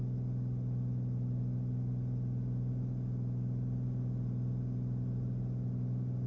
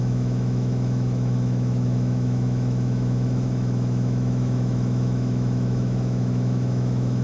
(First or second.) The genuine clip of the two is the first